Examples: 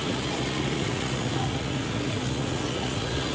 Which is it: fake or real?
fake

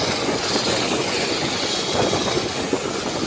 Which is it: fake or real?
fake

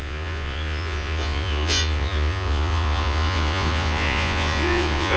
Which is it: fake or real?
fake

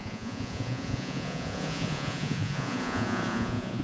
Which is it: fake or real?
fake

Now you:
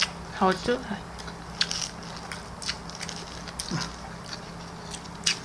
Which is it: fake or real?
real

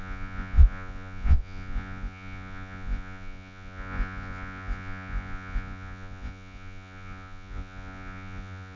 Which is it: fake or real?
fake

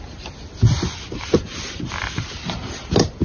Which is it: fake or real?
real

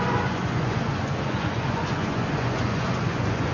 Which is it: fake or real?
fake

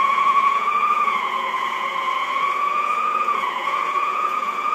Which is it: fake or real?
fake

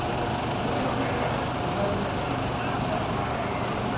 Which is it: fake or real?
real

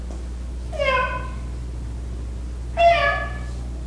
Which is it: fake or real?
real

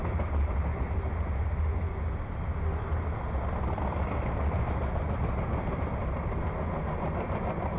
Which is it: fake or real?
real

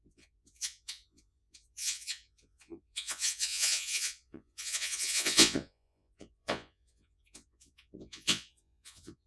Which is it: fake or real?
fake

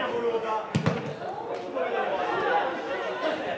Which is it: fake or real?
real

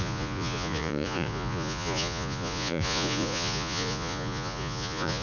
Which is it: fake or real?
fake